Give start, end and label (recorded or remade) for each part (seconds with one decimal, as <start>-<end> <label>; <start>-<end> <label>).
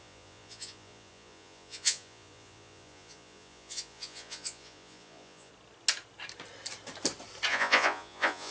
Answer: 0.0-5.5 remade; 5.5-7.5 recorded; 7.5-8.5 remade